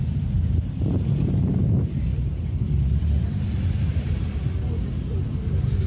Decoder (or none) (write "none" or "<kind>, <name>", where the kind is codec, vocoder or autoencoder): vocoder, BigVGAN v2